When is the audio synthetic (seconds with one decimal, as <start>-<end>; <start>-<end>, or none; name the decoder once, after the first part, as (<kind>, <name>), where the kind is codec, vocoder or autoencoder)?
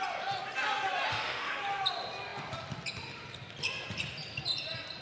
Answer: 1.1-1.6 (autoencoder, DAC-VAE)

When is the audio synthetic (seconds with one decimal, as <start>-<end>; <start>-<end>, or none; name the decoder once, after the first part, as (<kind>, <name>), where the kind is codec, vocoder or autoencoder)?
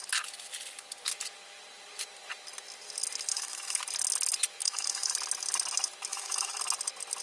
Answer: 3.3-3.8 (autoencoder, DAC-VAE); 4.6-5.1; 6.1-6.6